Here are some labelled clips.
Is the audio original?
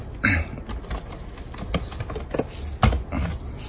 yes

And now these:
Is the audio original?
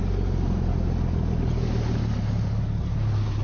yes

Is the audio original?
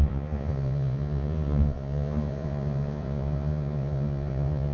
no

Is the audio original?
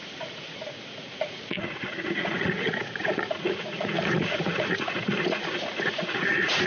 no